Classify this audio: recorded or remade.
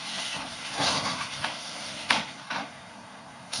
remade